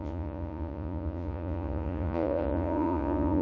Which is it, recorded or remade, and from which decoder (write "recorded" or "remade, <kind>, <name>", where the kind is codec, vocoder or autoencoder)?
remade, vocoder, Vocos